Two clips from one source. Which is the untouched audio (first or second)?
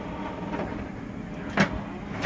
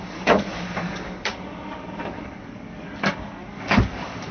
first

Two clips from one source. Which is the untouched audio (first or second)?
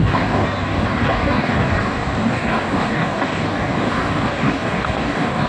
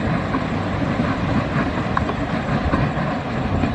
second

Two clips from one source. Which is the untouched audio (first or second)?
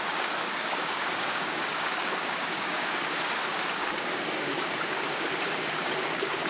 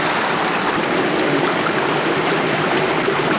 second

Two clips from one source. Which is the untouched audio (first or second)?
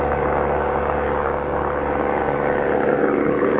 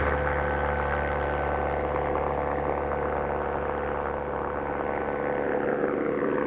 second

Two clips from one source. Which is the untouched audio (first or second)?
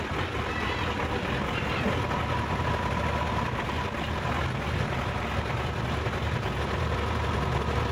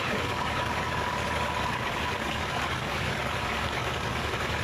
first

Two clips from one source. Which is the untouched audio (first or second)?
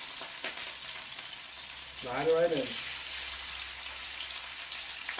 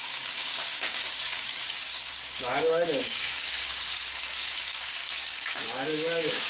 first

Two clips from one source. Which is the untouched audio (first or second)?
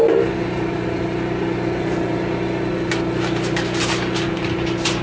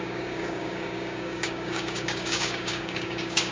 first